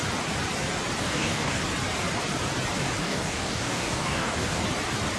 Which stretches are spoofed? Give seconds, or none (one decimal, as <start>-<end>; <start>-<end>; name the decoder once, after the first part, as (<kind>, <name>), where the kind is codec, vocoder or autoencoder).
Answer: 1.0-1.6 (codec, DAC); 3.0-4.6